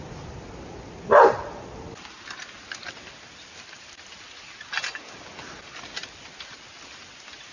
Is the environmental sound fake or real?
real